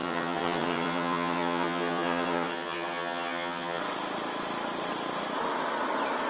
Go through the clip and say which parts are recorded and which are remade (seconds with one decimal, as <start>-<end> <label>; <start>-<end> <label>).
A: 0.0-3.8 remade; 3.8-6.3 recorded